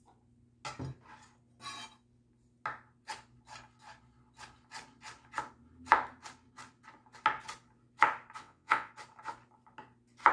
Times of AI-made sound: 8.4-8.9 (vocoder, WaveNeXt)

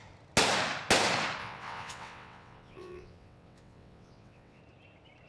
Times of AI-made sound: 1.4-4.6 (vocoder, WaveNeXt)

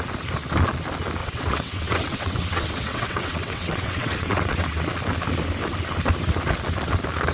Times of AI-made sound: 1.2-4.8 (vocoder, WaveNeXt)